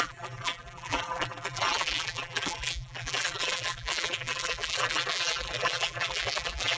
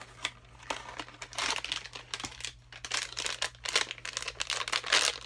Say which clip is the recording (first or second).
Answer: second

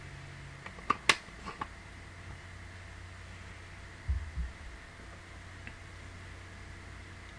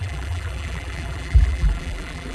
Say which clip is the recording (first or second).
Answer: first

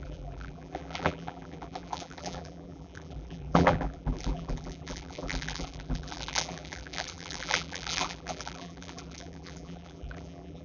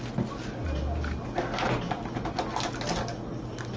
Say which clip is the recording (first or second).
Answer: second